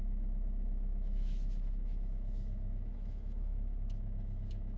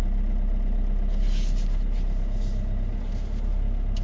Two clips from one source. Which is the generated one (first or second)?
first